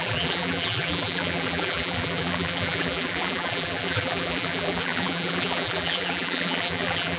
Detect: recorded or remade remade